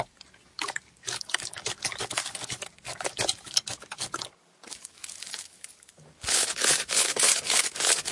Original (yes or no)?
no